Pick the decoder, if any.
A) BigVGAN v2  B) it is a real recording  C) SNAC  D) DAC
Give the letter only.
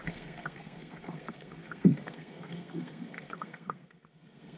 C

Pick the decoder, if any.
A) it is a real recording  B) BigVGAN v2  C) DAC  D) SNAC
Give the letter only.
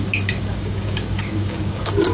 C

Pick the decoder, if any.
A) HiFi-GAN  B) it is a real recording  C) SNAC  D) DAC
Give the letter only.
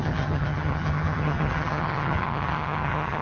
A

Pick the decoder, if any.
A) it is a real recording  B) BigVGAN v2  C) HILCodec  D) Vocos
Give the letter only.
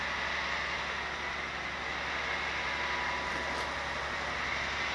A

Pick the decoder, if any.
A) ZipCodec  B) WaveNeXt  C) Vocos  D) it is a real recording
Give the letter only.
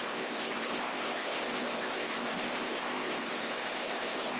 A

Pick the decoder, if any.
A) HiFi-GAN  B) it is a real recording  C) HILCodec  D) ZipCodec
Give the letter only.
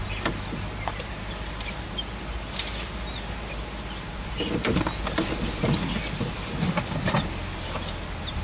B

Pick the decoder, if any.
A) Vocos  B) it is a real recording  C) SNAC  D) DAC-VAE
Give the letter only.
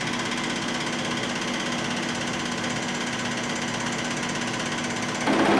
B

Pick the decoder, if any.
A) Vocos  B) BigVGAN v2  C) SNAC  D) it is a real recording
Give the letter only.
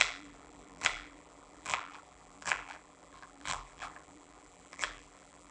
B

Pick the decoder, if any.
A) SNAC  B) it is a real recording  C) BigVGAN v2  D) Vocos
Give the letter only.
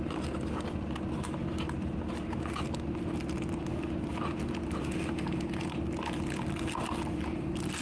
B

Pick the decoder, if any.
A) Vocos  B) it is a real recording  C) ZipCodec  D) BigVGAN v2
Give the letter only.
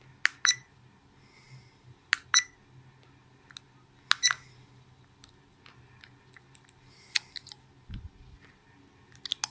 B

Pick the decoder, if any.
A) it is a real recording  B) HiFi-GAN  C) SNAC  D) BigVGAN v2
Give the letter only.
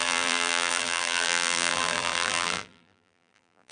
D